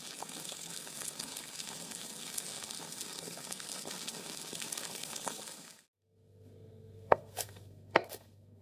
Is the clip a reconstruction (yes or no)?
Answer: yes